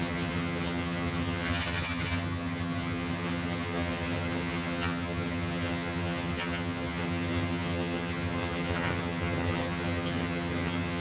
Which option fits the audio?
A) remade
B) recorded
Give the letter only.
A